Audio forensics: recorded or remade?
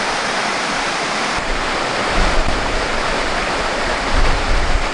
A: remade